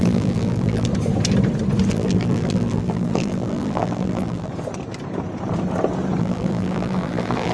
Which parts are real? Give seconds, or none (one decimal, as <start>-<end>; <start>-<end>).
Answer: 0.9-1.9; 4.5-6.2